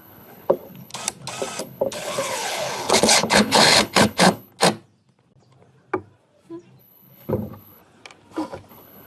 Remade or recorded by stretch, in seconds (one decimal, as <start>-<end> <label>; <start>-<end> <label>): 0.0-0.9 remade; 0.9-1.6 recorded; 1.6-4.5 remade; 4.5-6.8 recorded; 6.8-7.8 remade; 7.8-8.7 recorded; 8.7-9.1 remade